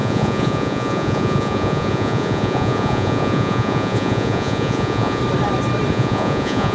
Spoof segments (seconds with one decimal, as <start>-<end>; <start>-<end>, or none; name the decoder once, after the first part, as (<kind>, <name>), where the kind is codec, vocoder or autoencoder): 0.0-5.2 (vocoder, Vocos); 5.9-6.7